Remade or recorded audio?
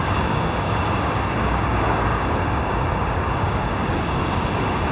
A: remade